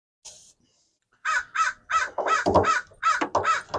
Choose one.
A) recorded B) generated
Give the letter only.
A